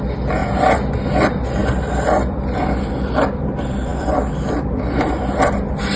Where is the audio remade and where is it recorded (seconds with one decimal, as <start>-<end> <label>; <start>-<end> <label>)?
0.0-6.0 recorded